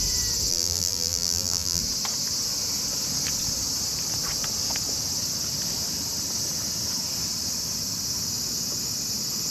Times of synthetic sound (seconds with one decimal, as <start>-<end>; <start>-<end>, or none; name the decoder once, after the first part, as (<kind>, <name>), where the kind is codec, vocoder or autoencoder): 0.5-1.8 (vocoder, BigVGAN v2)